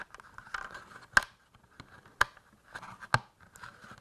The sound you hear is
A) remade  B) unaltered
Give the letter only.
B